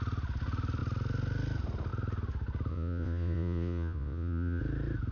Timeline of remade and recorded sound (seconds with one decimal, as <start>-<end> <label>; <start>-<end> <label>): 0.0-2.7 recorded; 2.7-4.6 remade; 4.6-5.1 recorded